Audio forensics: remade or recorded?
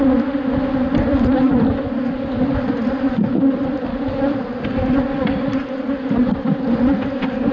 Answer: recorded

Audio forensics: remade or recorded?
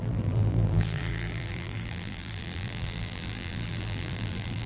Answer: remade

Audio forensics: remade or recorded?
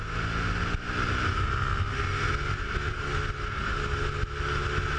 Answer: recorded